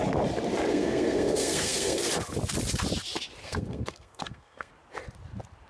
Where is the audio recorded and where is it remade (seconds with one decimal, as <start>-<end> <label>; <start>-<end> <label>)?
0.0-0.7 recorded; 0.7-2.1 remade; 2.1-3.4 recorded; 3.4-4.7 remade; 4.7-5.7 recorded